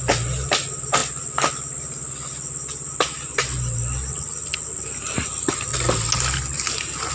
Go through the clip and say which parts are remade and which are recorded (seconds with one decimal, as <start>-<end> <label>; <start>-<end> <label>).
0.0-7.1 recorded